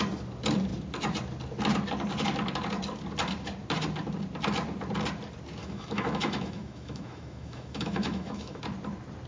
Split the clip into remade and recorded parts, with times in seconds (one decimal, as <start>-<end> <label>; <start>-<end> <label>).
0.0-5.6 recorded; 5.6-8.6 remade; 8.6-9.3 recorded